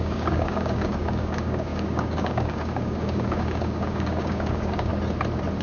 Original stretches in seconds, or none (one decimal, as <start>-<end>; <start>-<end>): 4.9-5.6

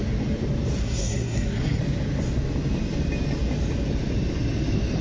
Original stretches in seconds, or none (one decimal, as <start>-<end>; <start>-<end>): 0.0-0.8; 1.8-5.0

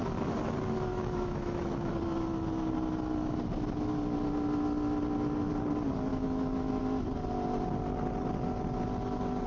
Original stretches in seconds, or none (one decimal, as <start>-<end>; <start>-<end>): 0.0-0.9; 1.9-6.1; 6.8-9.5